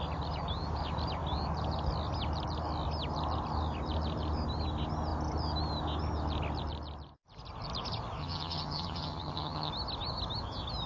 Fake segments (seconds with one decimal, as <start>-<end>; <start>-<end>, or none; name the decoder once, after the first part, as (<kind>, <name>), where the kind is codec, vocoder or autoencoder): 8.2-9.7 (vocoder, HiFi-GAN)